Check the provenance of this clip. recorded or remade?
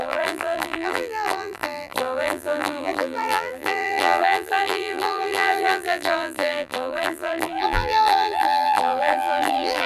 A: remade